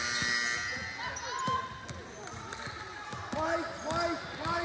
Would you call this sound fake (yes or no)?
no